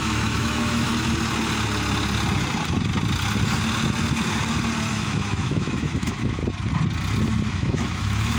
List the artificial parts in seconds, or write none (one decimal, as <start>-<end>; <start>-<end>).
0.0-0.9; 4.9-6.4; 7.5-8.4